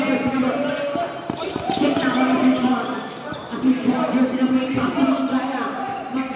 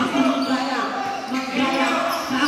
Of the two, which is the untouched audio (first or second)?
second